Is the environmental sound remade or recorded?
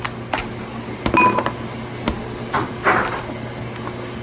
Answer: recorded